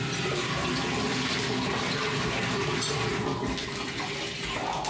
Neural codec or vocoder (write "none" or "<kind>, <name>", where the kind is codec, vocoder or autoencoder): none